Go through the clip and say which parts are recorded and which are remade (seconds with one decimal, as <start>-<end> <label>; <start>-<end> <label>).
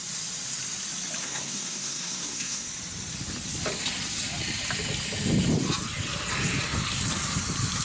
0.0-1.2 recorded; 1.2-2.7 remade; 2.7-7.8 recorded